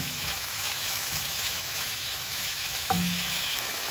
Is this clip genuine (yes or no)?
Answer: no